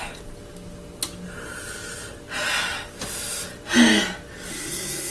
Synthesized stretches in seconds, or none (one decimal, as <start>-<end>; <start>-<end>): 4.5-5.1

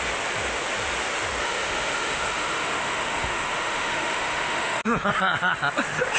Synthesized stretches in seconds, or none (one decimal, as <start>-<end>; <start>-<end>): 1.4-5.1

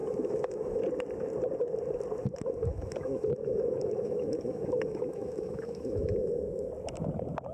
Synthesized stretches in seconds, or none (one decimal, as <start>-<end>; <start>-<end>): 0.0-0.8; 2.2-6.7